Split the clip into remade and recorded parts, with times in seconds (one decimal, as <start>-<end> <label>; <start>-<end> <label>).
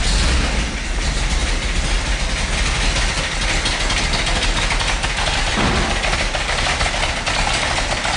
0.0-8.2 recorded